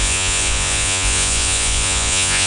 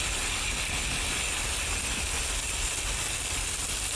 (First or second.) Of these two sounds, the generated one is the first